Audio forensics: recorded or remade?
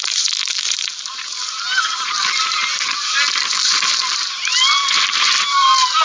remade